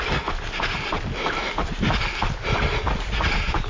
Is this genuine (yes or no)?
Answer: yes